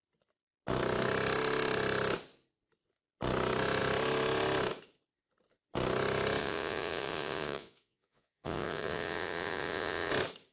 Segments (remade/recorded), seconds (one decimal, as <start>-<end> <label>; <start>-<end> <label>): 0.0-6.4 recorded; 6.4-10.1 remade; 10.1-10.5 recorded